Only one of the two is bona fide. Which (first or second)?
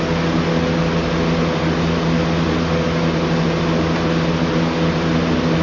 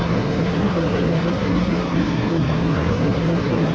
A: first